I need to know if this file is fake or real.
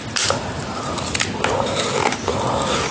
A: real